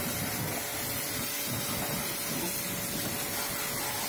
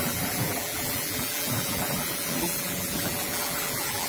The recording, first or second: first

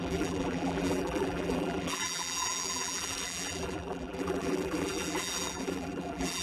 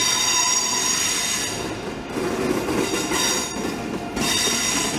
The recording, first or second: second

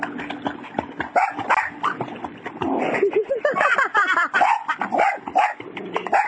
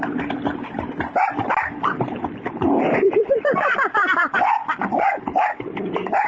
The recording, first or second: first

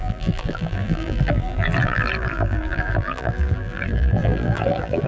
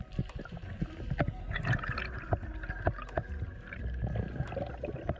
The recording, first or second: second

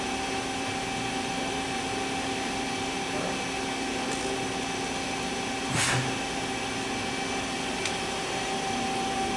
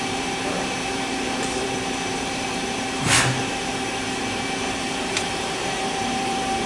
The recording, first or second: first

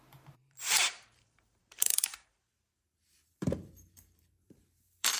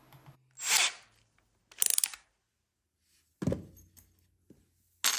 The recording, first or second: second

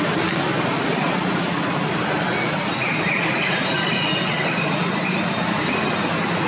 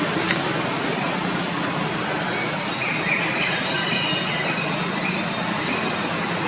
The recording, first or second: second